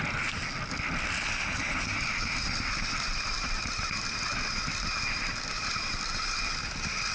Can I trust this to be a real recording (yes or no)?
yes